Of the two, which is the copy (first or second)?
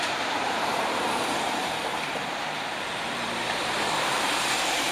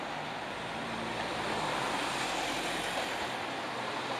first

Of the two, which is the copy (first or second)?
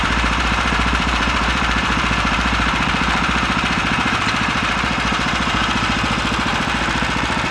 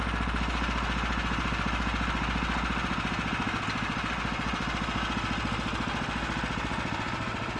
first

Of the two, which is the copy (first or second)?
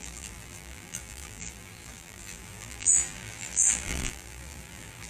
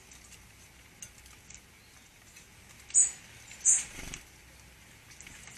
first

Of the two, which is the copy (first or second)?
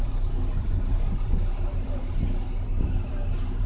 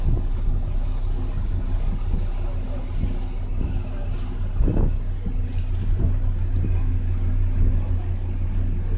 first